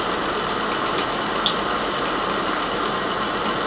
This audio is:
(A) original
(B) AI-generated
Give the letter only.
A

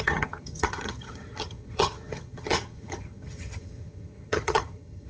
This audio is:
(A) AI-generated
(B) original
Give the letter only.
A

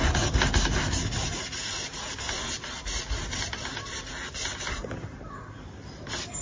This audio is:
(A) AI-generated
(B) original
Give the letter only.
B